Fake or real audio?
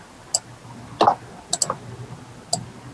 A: real